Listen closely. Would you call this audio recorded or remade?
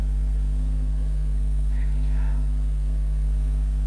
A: remade